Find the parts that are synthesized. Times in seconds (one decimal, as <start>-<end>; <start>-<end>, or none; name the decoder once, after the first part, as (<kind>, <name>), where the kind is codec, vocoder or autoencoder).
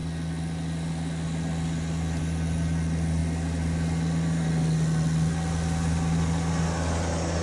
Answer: none